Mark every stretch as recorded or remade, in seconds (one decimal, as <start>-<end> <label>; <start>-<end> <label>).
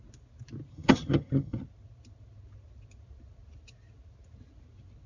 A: 0.0-0.7 recorded; 0.7-1.6 remade; 1.6-5.1 recorded